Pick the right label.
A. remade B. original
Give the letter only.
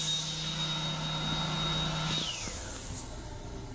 B